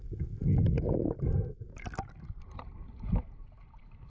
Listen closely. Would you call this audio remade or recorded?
recorded